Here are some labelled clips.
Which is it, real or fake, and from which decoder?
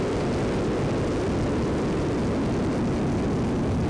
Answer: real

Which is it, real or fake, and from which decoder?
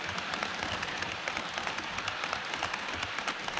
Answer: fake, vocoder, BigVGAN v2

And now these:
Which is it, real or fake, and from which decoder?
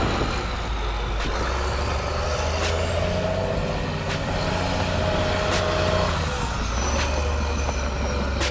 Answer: real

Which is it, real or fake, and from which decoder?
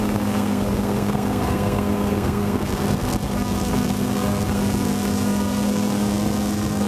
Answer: fake, codec, SNAC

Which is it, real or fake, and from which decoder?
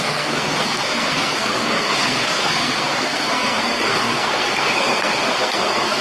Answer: fake, codec, SNAC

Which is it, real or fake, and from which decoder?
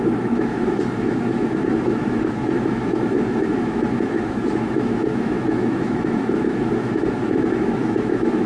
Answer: fake, autoencoder, DAC-VAE